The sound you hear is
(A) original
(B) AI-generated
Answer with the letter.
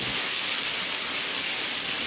A